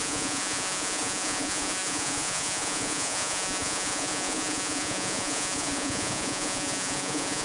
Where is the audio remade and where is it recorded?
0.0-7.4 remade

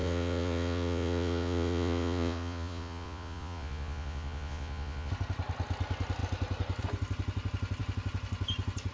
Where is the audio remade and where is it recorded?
0.0-5.1 remade; 5.1-8.9 recorded

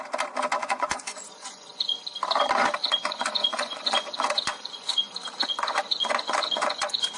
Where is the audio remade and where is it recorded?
0.0-0.6 recorded; 0.6-2.0 remade; 2.0-2.8 recorded; 2.8-7.2 remade

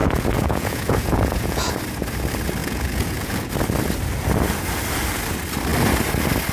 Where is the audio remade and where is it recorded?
0.0-1.7 remade; 1.7-2.6 recorded; 2.6-3.5 remade; 3.5-6.5 recorded

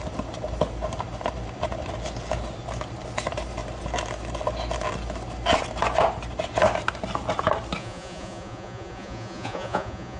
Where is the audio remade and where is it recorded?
0.0-7.8 recorded; 7.8-10.2 remade